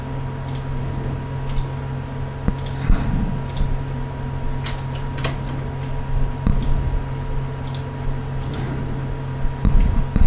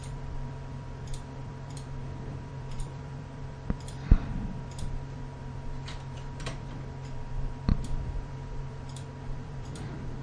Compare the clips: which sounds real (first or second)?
first